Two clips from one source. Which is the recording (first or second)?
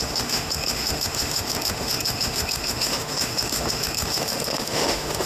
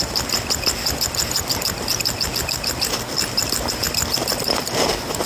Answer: second